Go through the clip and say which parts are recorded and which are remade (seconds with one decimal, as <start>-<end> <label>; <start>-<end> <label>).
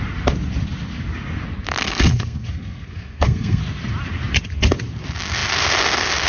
0.0-1.8 recorded; 1.8-3.6 remade; 3.6-6.3 recorded